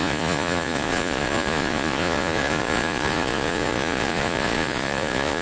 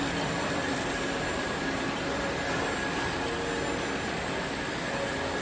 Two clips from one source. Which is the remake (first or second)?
first